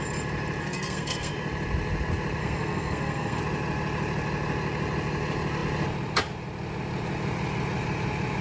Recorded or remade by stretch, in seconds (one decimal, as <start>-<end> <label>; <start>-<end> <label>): 0.0-0.6 recorded; 0.6-1.3 remade; 1.3-2.4 recorded; 2.4-3.4 remade; 3.4-8.4 recorded